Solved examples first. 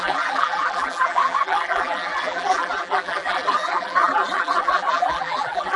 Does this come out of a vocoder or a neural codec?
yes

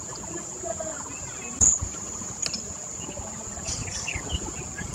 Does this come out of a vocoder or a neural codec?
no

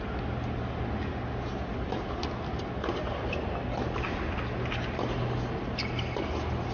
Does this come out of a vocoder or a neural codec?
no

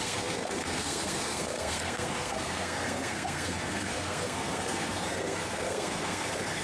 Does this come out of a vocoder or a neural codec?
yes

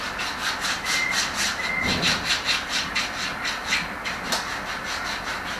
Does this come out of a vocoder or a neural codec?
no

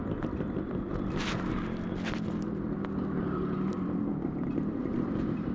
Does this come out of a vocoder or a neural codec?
no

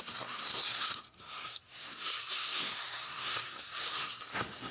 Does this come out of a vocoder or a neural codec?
yes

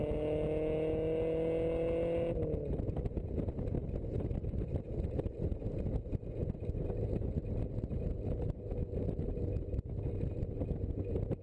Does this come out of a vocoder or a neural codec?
no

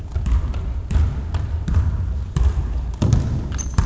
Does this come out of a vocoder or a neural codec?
no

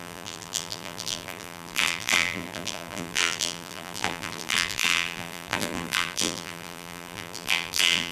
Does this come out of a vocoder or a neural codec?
yes